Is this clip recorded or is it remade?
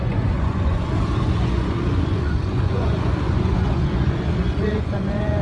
remade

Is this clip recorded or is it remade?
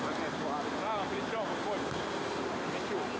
recorded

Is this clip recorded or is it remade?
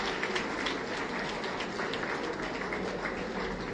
recorded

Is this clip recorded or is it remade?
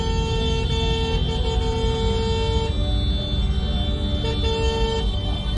recorded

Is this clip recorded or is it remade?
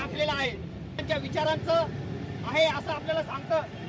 remade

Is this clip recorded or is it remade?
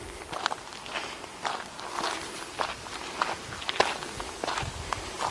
recorded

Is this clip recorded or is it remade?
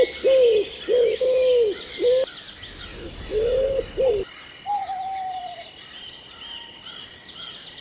recorded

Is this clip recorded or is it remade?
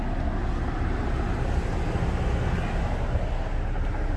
recorded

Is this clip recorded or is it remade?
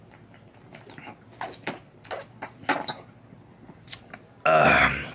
recorded